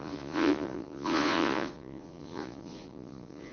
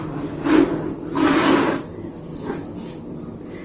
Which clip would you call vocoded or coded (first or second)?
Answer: first